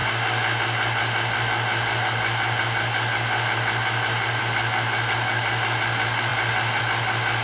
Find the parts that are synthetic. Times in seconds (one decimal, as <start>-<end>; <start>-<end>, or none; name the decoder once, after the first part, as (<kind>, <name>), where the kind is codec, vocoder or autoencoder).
none